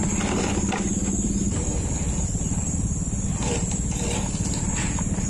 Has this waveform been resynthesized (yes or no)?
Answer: yes